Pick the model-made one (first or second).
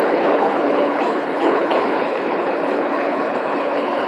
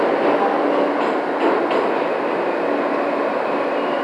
first